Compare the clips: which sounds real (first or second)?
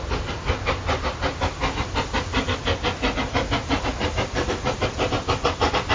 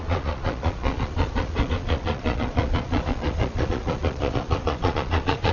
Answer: first